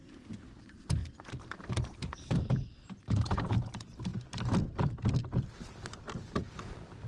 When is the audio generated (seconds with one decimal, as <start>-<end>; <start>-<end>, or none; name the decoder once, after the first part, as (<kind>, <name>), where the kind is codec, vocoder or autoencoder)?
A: 0.0-1.0 (vocoder, BigVGAN v2); 1.5-4.1